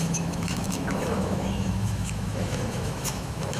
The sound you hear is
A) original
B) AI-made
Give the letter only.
B